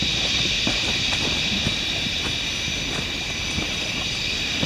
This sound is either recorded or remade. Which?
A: remade